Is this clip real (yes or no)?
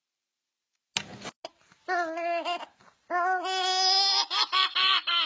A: yes